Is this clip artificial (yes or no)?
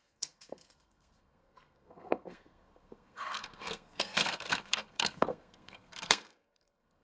yes